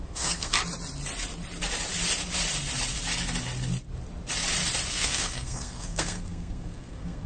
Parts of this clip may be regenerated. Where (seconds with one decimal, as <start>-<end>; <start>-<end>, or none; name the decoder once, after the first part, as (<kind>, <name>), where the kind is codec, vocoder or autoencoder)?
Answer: 0.0-0.5 (codec, SNAC); 4.9-7.3